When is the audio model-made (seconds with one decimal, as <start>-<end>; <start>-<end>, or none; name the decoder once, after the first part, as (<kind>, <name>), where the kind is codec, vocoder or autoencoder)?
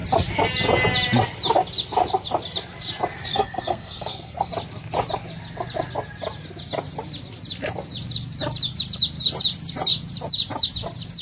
3.3-4.5 (codec, SNAC)